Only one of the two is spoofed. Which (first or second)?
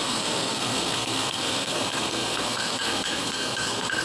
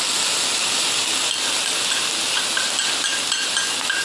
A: first